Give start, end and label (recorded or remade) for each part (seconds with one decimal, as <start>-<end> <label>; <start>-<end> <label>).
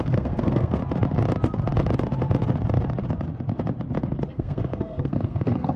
0.0-0.8 remade; 0.8-4.3 recorded; 4.3-5.8 remade